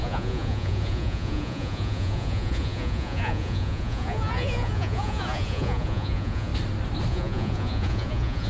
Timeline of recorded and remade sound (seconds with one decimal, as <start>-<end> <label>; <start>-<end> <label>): 0.0-6.5 remade; 6.5-7.1 recorded; 7.1-8.5 remade

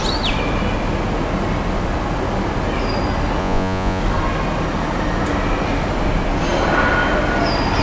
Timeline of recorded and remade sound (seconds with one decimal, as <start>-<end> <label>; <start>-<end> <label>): 0.0-3.4 recorded; 3.4-4.0 remade; 4.0-7.8 recorded

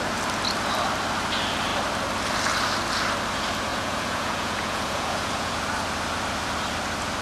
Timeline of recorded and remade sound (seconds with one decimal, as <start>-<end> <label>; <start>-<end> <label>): 0.0-3.7 recorded; 3.7-5.5 remade; 5.5-7.2 recorded

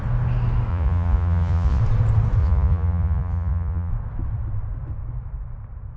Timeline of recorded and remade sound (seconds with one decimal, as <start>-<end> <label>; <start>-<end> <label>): 0.0-0.7 recorded; 0.7-1.8 remade; 1.8-2.4 recorded; 2.4-3.9 remade; 3.9-6.0 recorded